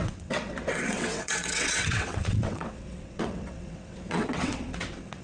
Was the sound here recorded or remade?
remade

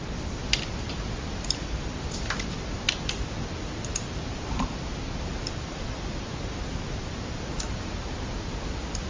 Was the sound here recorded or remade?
recorded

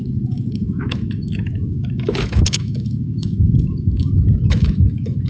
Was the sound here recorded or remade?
remade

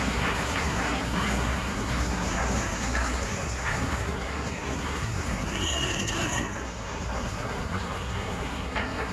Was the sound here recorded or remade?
remade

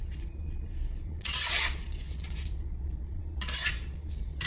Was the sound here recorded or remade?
remade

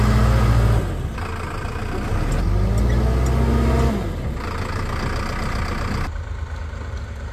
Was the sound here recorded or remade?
recorded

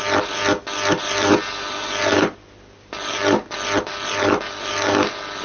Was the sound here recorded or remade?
recorded